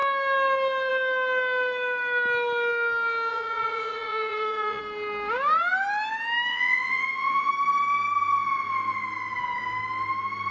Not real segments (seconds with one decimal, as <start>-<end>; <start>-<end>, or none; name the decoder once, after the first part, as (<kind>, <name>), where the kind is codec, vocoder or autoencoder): 3.3-4.8 (vocoder, Vocos); 6.5-7.5